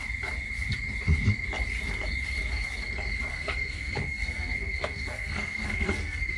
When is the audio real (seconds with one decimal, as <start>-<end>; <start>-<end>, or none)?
0.0-3.3